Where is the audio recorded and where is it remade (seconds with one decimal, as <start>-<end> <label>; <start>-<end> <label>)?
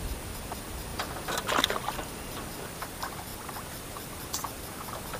0.0-5.2 recorded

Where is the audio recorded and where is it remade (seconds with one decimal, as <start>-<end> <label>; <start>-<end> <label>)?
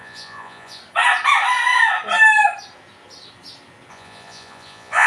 0.0-0.8 remade; 0.8-3.9 recorded; 3.9-5.1 remade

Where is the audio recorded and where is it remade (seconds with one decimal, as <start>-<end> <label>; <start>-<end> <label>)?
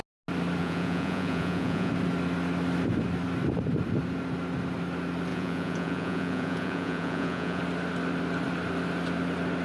0.0-0.6 recorded; 0.6-1.9 remade; 1.9-5.3 recorded; 5.3-7.6 remade; 7.6-9.6 recorded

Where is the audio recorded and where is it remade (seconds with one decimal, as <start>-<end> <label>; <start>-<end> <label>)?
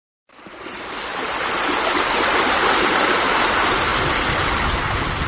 0.0-1.1 recorded; 1.1-2.2 remade; 2.2-5.3 recorded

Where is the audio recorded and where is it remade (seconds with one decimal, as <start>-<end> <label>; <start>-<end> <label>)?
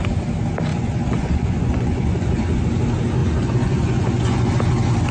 0.0-0.7 recorded; 0.7-2.6 remade; 2.6-3.2 recorded; 3.2-4.5 remade; 4.5-5.1 recorded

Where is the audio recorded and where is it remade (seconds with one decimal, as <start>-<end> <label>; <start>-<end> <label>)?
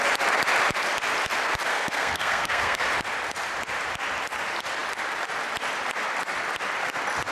0.0-1.7 recorded; 1.7-2.9 remade; 2.9-7.3 recorded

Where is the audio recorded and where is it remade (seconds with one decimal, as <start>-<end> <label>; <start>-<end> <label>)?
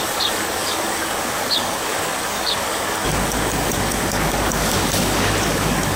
0.0-6.0 remade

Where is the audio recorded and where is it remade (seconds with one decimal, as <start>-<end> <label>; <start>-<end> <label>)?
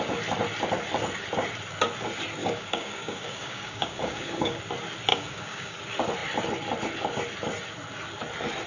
0.0-2.4 recorded; 2.4-4.6 remade; 4.6-5.1 recorded; 5.1-5.8 remade; 5.8-8.7 recorded